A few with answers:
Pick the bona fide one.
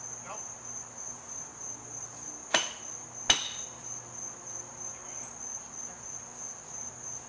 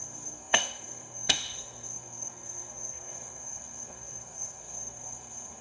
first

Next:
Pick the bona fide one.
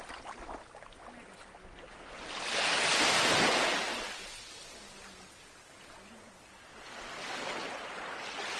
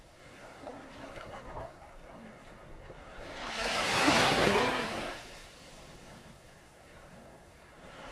first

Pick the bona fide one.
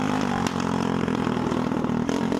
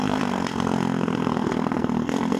first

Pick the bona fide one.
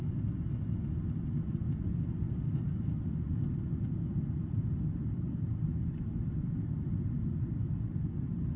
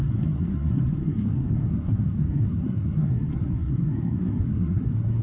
first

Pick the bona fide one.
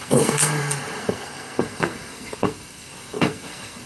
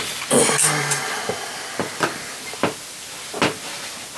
second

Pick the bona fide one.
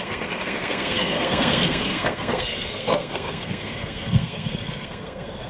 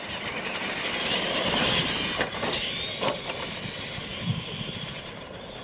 second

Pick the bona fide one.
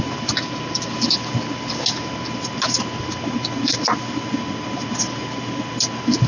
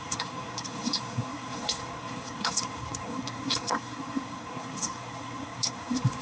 first